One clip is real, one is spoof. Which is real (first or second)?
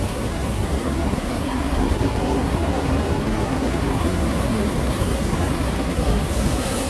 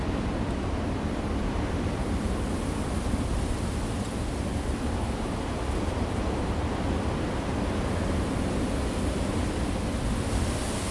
second